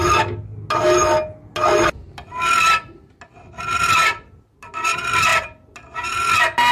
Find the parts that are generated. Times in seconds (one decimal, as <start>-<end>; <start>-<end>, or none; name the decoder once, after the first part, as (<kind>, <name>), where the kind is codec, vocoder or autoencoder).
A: none